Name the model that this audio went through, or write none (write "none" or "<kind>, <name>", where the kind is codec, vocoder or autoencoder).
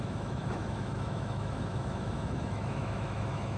autoencoder, DAC-VAE